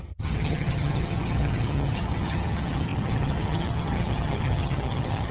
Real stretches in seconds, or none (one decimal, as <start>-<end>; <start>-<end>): none

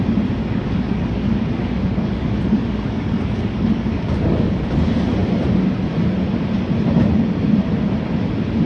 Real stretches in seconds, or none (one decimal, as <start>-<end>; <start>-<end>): 0.0-0.4; 4.6-8.7

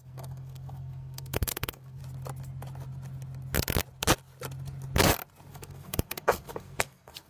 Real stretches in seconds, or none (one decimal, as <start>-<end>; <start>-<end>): 2.0-5.5

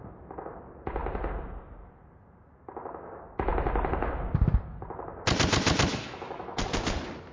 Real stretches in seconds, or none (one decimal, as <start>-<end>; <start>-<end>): 0.0-5.9; 6.6-7.3